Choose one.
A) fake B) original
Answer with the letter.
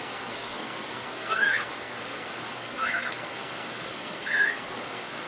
A